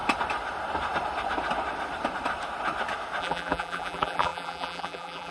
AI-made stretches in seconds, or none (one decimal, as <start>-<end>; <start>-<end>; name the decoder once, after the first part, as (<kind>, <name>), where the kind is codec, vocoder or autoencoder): 3.2-5.3 (vocoder, BigVGAN v2)